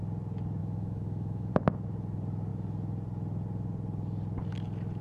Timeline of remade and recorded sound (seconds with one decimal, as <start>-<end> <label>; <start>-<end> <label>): 0.0-0.6 recorded; 0.6-1.5 remade; 1.5-5.0 recorded